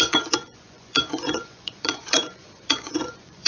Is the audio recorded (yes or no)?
no